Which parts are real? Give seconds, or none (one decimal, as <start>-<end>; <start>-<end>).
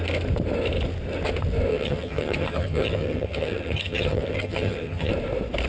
0.0-1.7; 5.1-5.7